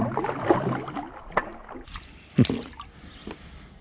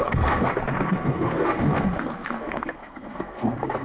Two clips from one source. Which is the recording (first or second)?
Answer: first